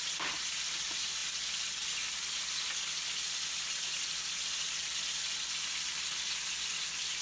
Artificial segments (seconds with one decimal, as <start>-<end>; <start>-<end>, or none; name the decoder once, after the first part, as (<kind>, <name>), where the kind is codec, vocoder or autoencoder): none